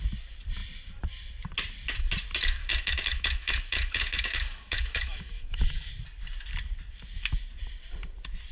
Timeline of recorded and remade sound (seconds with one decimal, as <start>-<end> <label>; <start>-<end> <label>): 0.0-2.6 recorded; 2.6-5.9 remade; 5.9-8.5 recorded